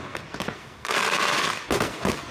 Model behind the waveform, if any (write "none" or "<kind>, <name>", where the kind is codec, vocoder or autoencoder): codec, SNAC